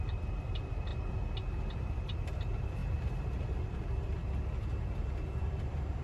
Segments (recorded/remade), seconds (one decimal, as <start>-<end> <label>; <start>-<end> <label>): 0.0-0.9 remade; 0.9-1.9 recorded; 1.9-4.2 remade; 4.2-5.4 recorded; 5.4-6.0 remade